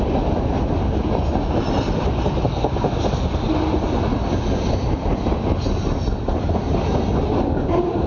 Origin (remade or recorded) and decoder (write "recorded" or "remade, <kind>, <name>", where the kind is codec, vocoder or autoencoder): recorded